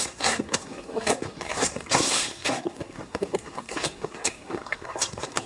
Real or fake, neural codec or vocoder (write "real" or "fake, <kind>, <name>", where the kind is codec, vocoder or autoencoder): fake, codec, SNAC